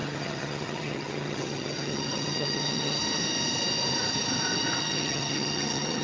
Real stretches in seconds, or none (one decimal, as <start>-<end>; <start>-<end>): 3.0-4.8